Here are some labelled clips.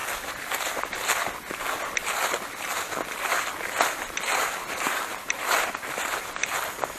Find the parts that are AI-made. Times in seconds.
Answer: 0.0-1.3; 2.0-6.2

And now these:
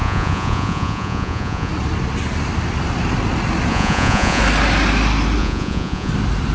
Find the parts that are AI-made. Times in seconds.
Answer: 0.0-1.7; 3.7-4.4; 5.4-6.1

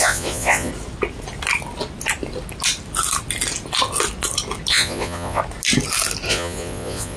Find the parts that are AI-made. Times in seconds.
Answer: 0.0-0.7; 4.7-5.4; 6.3-7.2

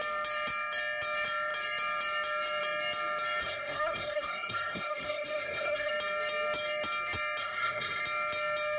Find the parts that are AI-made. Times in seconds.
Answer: 3.4-5.9; 7.4-8.0

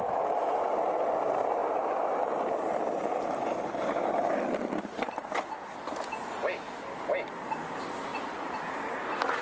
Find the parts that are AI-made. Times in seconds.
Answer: none

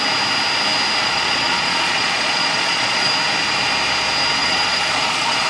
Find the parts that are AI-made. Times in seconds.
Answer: 1.0-3.1; 4.4-5.5